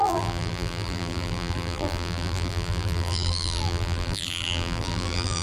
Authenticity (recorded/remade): remade